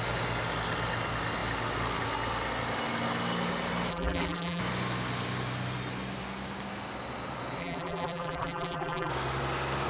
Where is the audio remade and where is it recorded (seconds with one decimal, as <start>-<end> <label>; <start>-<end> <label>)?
0.0-3.9 recorded; 3.9-4.6 remade; 4.6-7.6 recorded; 7.6-9.1 remade; 9.1-9.9 recorded